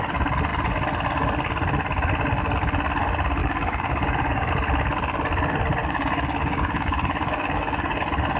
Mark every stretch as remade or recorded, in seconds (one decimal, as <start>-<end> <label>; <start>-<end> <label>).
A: 0.0-3.4 recorded; 3.4-4.5 remade; 4.5-5.8 recorded; 5.8-8.0 remade; 8.0-8.4 recorded